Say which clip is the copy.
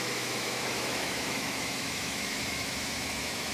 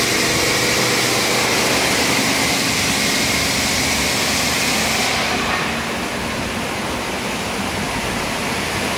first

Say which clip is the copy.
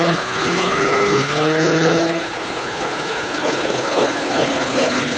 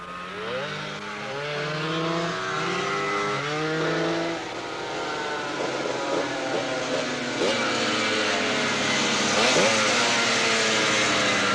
first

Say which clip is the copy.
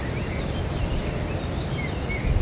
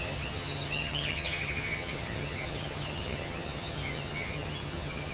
second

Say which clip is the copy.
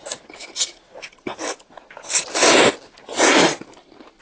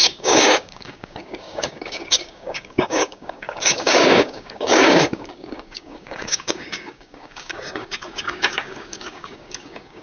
second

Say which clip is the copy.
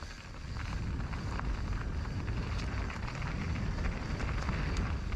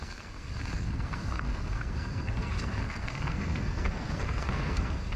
second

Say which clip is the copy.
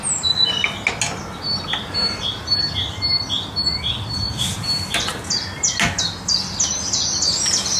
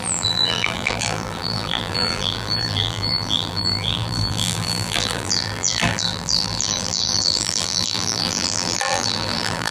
second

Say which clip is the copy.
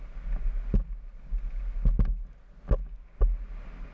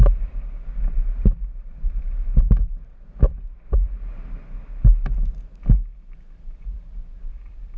second